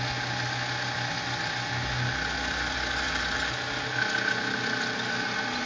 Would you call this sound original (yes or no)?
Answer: yes